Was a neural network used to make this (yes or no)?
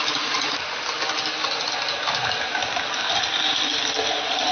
no